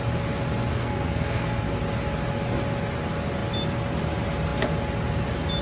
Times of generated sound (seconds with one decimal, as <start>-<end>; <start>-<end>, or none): 0.7-1.8